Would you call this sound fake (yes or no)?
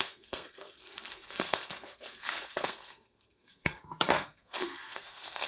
yes